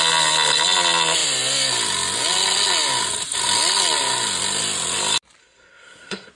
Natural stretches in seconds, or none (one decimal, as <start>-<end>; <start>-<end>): 0.0-5.4